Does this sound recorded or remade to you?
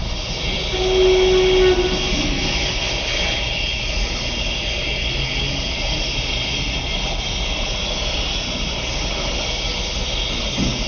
recorded